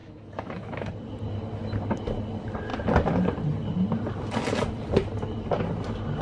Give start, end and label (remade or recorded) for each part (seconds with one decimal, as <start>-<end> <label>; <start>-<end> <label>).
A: 0.0-0.9 remade; 0.9-6.2 recorded